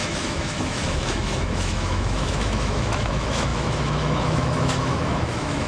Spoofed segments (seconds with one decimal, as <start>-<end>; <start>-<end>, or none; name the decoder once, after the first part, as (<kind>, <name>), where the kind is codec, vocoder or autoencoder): 0.0-5.7 (autoencoder, DAC-VAE)